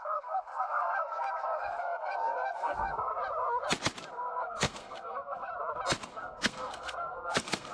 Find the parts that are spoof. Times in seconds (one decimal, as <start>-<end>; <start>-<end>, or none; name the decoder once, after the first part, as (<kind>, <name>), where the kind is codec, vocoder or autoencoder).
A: 0.0-3.1 (codec, SNAC); 4.1-5.5; 6.1-7.7